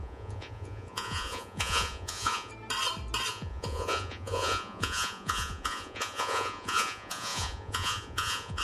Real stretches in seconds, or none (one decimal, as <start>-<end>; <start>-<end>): 2.5-3.3